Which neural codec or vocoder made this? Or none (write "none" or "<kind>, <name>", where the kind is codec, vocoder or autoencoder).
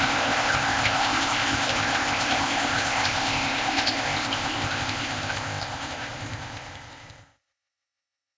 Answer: codec, ZipCodec